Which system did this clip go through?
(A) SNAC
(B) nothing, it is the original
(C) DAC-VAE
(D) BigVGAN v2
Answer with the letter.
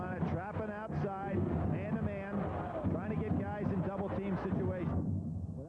B